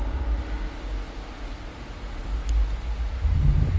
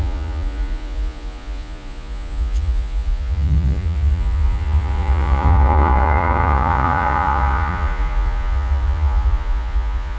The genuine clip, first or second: first